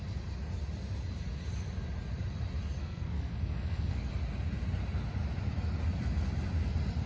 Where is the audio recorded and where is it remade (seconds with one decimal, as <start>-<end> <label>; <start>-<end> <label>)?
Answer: 0.0-2.8 recorded; 2.8-4.1 remade; 4.1-7.1 recorded